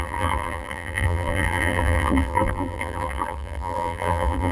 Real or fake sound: fake